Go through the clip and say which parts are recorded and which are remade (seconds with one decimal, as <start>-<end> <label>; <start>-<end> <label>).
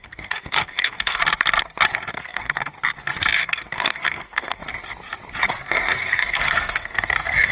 0.0-1.2 remade; 1.2-2.1 recorded; 2.1-2.7 remade; 2.7-3.4 recorded; 3.4-4.6 remade; 4.6-5.5 recorded; 5.5-7.5 remade